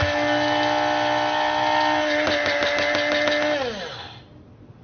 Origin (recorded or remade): recorded